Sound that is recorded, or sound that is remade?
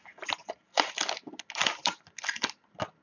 recorded